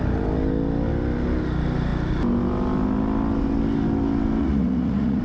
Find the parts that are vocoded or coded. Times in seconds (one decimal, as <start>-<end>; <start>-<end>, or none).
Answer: 4.4-5.2